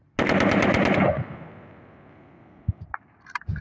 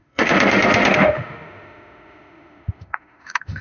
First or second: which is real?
first